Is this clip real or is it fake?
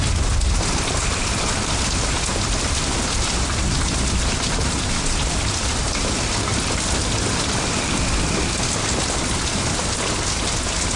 real